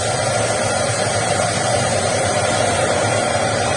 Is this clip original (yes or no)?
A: no